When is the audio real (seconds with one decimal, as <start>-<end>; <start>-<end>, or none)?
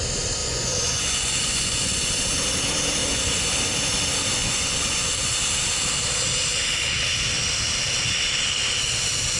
0.0-0.4; 2.1-3.0; 3.5-4.4; 5.4-9.4